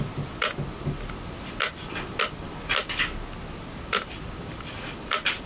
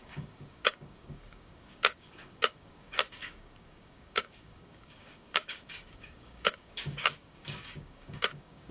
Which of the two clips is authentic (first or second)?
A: first